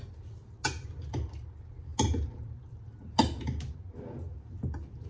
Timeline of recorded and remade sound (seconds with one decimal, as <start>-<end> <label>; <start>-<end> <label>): 0.0-5.1 recorded